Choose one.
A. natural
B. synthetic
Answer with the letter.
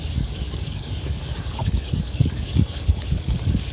B